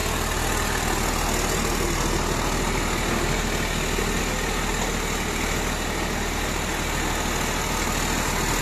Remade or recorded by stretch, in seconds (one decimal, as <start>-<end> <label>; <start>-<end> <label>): 0.0-8.6 recorded